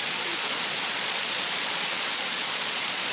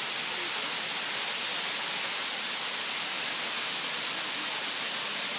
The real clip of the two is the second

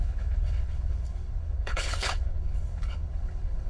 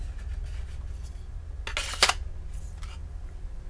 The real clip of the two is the second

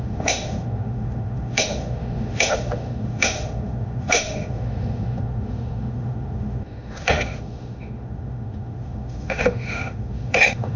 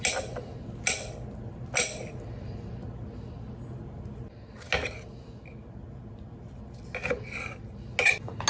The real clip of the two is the second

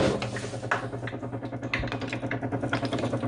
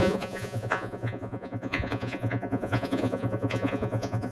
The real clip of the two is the first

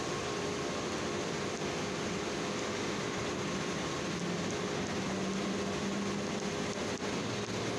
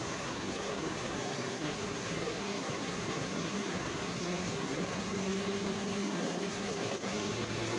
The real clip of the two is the first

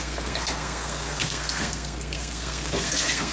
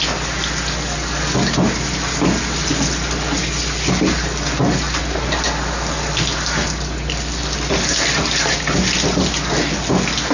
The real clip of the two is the second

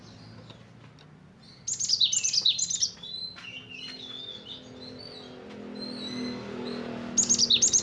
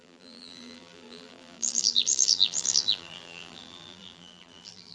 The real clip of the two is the first